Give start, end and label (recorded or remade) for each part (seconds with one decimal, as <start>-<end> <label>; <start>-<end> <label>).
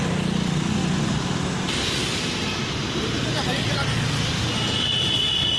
0.0-5.6 recorded